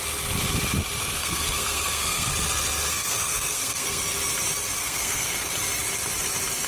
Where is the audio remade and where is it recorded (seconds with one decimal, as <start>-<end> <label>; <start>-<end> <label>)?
0.0-1.0 recorded; 1.0-2.3 remade; 2.3-2.9 recorded; 2.9-4.0 remade; 4.0-4.8 recorded; 4.8-5.5 remade; 5.5-6.7 recorded

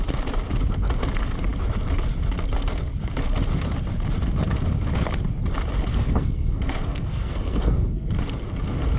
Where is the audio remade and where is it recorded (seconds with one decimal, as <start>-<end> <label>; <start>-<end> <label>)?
0.0-5.9 recorded; 5.9-8.2 remade; 8.2-9.0 recorded

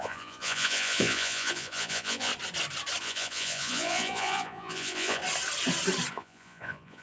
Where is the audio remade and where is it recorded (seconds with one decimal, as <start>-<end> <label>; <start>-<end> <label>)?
0.0-2.3 remade; 2.3-3.0 recorded; 3.0-5.2 remade; 5.2-6.1 recorded; 6.1-7.0 remade

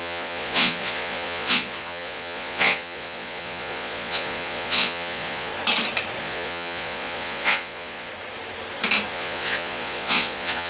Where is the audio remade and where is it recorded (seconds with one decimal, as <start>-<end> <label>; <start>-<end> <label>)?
0.0-5.5 remade; 5.5-6.2 recorded; 6.2-8.1 remade; 8.1-9.1 recorded; 9.1-10.7 remade

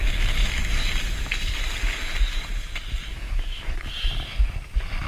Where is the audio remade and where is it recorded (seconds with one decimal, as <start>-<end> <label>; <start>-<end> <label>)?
0.0-3.1 recorded; 3.1-4.1 remade; 4.1-5.1 recorded